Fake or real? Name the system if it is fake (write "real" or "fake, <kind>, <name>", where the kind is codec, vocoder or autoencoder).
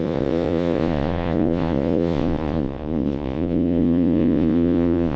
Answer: fake, vocoder, Vocos